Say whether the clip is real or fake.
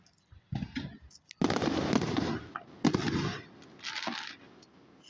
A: real